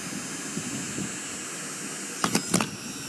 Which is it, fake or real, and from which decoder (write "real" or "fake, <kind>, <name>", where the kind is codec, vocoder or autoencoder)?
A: real